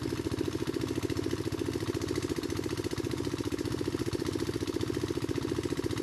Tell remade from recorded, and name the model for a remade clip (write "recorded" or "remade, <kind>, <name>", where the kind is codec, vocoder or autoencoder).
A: recorded